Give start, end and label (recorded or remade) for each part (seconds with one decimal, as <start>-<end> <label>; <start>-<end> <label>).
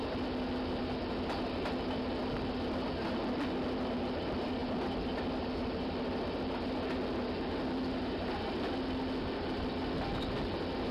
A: 0.0-10.9 recorded